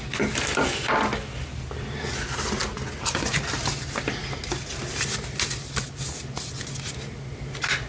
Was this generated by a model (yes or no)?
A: no